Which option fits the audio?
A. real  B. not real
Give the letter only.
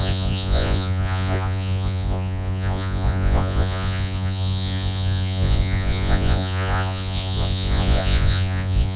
B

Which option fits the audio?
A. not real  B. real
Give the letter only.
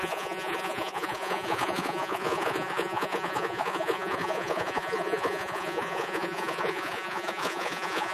A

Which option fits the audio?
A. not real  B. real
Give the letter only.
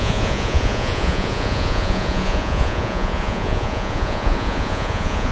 A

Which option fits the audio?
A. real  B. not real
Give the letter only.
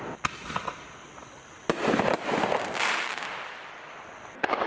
A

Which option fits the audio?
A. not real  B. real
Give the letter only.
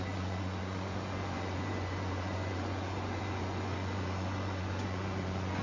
A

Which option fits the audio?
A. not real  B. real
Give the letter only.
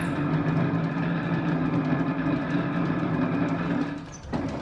B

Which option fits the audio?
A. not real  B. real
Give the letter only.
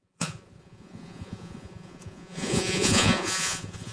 A